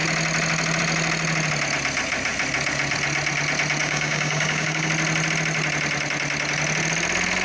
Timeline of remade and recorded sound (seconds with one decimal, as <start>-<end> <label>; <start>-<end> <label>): 0.0-3.8 recorded; 3.8-4.9 remade; 4.9-7.4 recorded

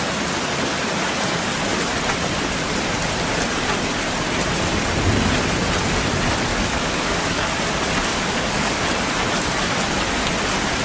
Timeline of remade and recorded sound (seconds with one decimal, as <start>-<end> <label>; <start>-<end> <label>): 0.0-6.5 recorded; 6.5-7.5 remade; 7.5-8.1 recorded; 8.1-8.8 remade; 8.8-10.8 recorded

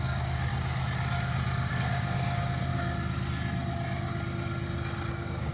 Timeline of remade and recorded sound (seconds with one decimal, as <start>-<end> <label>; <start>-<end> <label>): 0.0-0.5 remade; 0.5-1.7 recorded; 1.7-2.7 remade; 2.7-5.1 recorded; 5.1-5.5 remade

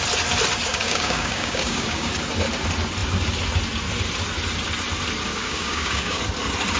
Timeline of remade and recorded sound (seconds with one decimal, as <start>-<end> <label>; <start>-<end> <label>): 0.0-0.7 recorded; 0.7-2.1 remade; 2.1-5.3 recorded; 5.3-6.2 remade; 6.2-6.8 recorded

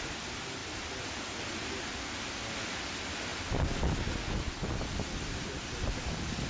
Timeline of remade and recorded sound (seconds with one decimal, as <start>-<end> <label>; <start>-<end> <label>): 0.0-6.5 recorded

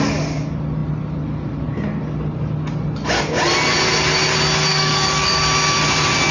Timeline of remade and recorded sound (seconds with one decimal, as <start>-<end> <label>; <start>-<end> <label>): 0.0-4.7 recorded; 4.7-5.4 remade; 5.4-6.3 recorded